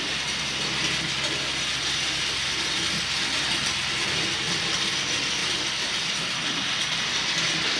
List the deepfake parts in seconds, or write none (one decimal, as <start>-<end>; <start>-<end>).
none